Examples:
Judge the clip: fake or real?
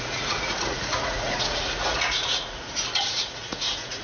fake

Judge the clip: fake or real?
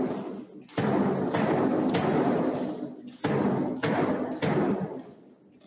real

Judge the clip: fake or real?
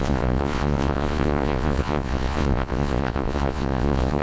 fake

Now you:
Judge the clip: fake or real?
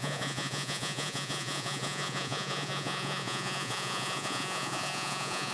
fake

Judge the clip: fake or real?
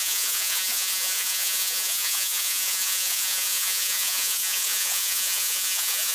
fake